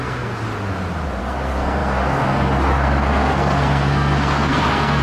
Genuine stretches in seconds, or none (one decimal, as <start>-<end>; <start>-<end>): 0.4-1.2